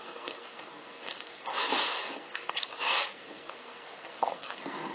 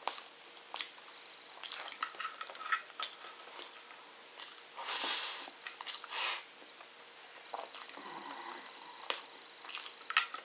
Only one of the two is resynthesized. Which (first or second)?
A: first